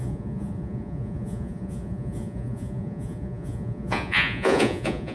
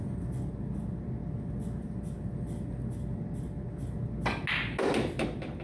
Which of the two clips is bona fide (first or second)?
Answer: second